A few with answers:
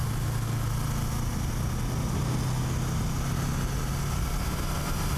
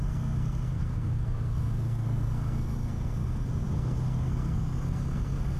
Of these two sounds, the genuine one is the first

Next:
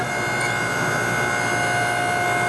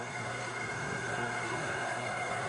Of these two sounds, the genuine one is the first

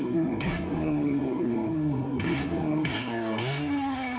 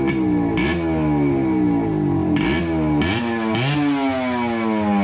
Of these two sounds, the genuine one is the second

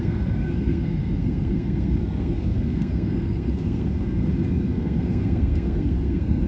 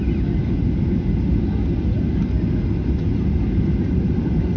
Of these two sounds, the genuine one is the second